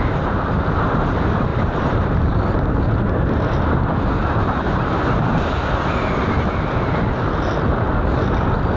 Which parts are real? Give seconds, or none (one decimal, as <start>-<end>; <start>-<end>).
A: 0.0-1.5; 3.9-8.8